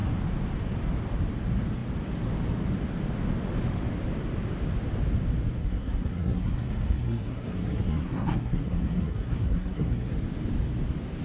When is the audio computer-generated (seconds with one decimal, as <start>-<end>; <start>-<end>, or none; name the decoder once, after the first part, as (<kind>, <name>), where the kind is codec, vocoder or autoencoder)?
5.6-10.1 (codec, SNAC)